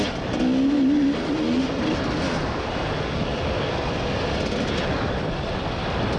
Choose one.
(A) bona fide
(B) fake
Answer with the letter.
A